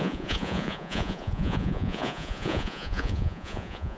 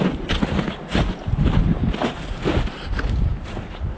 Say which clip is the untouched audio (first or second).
second